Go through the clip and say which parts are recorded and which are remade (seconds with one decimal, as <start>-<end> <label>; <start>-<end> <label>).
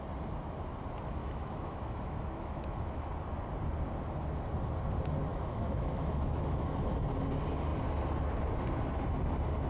0.0-1.2 recorded; 1.2-3.1 remade; 3.1-5.3 recorded; 5.3-6.9 remade; 6.9-9.7 recorded